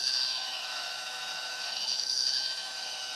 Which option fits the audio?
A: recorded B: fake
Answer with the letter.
B